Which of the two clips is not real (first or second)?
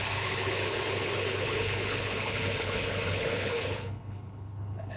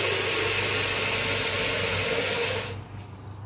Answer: first